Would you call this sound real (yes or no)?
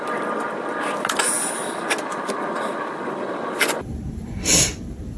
yes